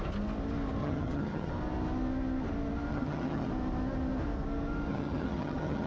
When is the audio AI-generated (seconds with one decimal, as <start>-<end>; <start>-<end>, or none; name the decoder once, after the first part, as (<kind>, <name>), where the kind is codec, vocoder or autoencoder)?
0.8-1.5 (vocoder, HiFi-GAN); 2.9-3.5; 4.9-5.9